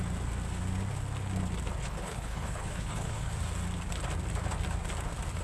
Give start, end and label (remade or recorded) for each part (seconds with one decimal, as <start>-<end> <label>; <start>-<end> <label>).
0.0-1.8 recorded; 1.8-3.3 remade; 3.3-5.4 recorded